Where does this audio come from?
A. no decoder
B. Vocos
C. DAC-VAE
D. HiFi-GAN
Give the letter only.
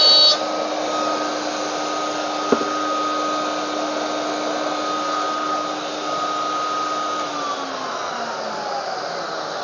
A